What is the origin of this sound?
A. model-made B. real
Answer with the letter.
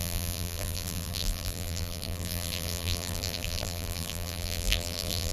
A